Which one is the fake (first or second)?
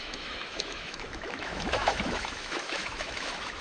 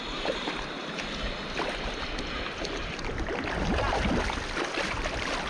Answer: first